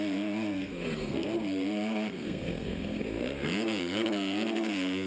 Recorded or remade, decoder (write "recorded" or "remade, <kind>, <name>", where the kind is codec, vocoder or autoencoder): remade, codec, SNAC